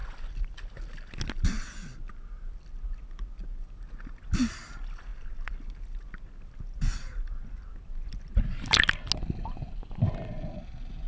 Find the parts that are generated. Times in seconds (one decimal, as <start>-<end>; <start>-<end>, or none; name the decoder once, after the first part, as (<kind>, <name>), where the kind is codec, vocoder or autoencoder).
none